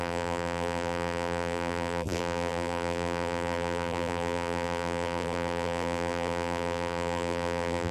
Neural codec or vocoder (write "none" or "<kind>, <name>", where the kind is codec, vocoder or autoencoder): vocoder, BigVGAN v2